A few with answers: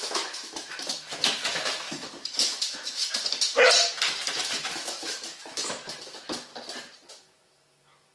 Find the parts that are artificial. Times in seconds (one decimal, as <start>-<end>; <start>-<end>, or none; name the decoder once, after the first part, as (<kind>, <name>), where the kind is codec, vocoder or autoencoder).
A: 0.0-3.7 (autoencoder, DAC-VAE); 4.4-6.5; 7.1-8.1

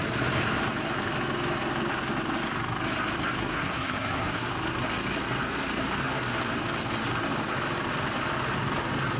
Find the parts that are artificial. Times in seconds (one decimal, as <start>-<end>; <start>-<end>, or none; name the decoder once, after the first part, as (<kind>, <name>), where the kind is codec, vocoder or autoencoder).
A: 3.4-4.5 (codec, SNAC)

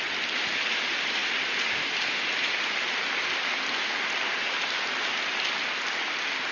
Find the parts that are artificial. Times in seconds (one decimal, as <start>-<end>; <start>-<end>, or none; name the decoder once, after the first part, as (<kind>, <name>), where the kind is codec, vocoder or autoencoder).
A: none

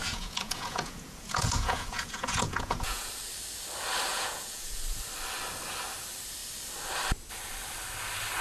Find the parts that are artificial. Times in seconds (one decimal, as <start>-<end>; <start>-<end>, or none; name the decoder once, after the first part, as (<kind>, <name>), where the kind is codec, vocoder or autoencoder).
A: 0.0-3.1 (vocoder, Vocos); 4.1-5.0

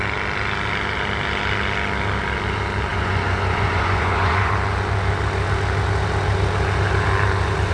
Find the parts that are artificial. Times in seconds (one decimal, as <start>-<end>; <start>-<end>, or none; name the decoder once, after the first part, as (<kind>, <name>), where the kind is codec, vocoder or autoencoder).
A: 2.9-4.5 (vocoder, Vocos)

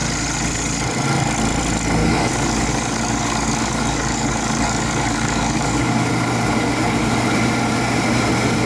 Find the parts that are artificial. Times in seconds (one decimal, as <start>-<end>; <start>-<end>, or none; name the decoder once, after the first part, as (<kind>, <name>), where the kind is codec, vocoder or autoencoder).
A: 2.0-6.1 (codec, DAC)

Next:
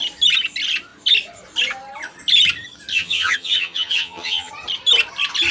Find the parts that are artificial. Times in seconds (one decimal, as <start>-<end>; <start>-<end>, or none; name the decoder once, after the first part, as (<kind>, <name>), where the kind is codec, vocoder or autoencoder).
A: 2.9-4.5 (vocoder, HiFi-GAN)

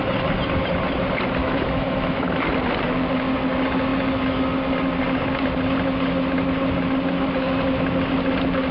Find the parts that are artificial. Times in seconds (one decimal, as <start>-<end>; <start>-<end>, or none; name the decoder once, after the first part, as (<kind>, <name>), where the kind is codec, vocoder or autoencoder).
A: 1.4-2.4 (autoencoder, DAC-VAE)